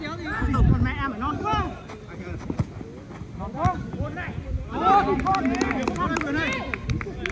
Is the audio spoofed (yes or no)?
no